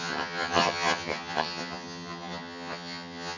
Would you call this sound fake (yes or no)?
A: yes